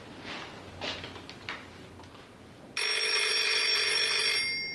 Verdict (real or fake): real